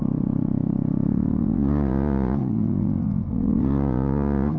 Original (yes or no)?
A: no